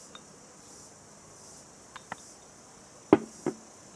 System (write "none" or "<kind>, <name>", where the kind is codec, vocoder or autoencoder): none